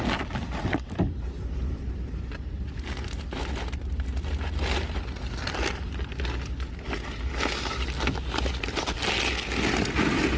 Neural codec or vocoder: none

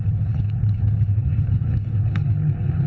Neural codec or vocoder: codec, HILCodec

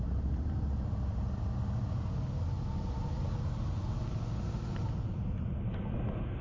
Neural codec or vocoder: none